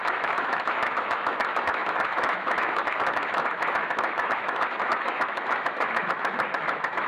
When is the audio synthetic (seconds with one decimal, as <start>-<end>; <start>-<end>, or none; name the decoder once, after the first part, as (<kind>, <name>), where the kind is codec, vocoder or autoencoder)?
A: 0.0-7.1 (autoencoder, DAC-VAE)